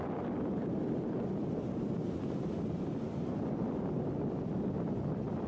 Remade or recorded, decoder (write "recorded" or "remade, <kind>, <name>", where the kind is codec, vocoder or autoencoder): recorded